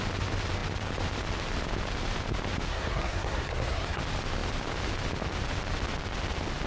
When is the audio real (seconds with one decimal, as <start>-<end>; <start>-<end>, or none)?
0.0-2.7; 4.0-6.7